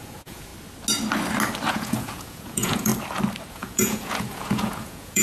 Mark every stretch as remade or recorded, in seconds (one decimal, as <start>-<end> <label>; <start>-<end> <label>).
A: 0.0-0.5 remade; 0.5-1.7 recorded; 1.7-2.9 remade; 2.9-3.5 recorded; 3.5-5.2 remade